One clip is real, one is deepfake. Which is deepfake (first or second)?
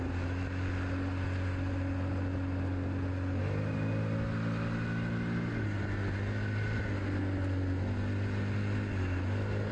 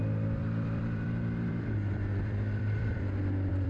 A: second